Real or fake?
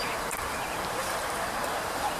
fake